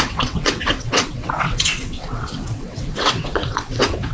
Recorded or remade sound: remade